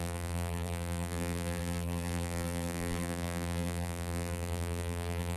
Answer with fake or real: fake